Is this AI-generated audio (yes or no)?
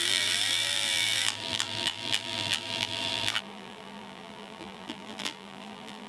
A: yes